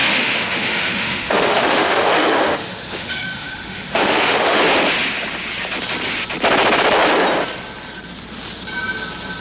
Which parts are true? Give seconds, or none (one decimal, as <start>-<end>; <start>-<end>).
4.6-9.4